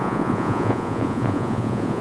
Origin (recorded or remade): remade